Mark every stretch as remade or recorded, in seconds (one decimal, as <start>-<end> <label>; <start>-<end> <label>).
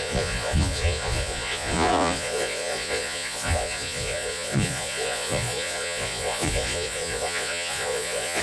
0.0-8.4 remade